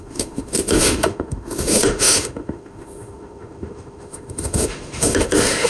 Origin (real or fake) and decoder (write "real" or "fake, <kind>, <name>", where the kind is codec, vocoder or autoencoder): fake, autoencoder, DAC-VAE